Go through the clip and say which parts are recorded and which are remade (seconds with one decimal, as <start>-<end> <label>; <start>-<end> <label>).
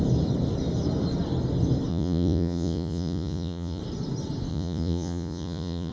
0.0-1.9 recorded; 1.9-3.8 remade; 3.8-4.5 recorded; 4.5-5.9 remade